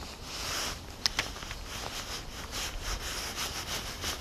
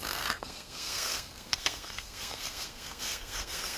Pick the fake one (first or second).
second